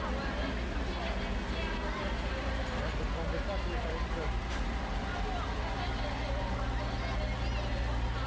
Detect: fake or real real